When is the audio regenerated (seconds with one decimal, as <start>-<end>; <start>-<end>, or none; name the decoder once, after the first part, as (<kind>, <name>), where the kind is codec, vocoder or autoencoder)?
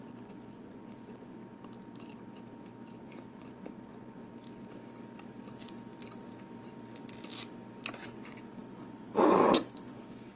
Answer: 0.0-1.4 (vocoder, Vocos); 3.0-4.2; 7.9-10.4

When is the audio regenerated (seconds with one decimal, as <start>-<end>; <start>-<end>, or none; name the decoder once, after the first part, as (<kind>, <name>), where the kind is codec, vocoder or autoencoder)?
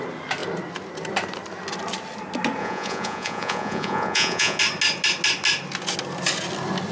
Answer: 2.6-4.6 (vocoder, Vocos)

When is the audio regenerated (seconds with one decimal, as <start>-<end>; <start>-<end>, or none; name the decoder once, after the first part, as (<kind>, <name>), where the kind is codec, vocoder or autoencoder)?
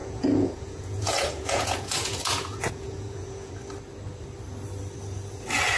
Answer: 0.0-3.5 (vocoder, Vocos)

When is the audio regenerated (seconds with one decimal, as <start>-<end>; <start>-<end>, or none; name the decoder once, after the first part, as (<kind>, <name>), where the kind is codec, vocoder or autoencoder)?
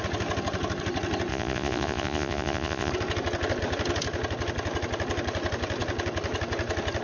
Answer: 1.3-2.9 (vocoder, Vocos)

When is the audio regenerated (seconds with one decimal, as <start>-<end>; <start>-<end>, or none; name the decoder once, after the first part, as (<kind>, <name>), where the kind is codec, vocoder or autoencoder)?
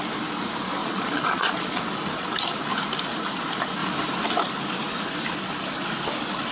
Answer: 0.8-1.8 (vocoder, Vocos)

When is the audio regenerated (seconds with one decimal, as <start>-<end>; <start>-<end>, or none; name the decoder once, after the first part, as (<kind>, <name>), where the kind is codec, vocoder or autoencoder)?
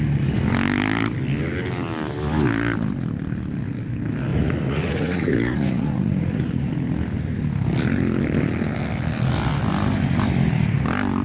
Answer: 4.3-6.7 (vocoder, Vocos)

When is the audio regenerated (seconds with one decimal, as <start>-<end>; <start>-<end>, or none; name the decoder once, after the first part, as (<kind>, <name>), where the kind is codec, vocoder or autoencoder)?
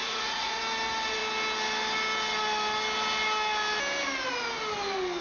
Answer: 0.0-0.6 (vocoder, Vocos)